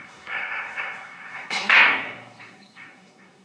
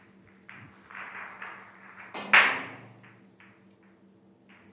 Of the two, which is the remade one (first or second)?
first